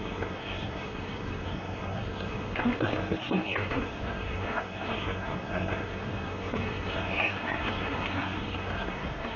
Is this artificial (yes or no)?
yes